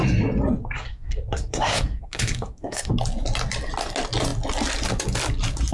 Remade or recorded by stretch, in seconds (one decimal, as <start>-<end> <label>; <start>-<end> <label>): 0.0-0.6 recorded; 0.6-2.9 remade; 2.9-5.7 recorded